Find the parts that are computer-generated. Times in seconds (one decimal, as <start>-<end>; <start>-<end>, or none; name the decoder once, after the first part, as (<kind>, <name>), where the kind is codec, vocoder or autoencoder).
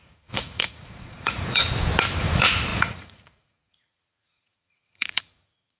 0.0-1.6 (vocoder, Vocos); 2.2-5.8